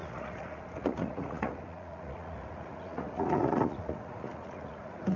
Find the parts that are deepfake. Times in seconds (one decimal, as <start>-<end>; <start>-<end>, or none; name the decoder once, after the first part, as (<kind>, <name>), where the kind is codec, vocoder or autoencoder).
0.0-5.2 (vocoder, Vocos)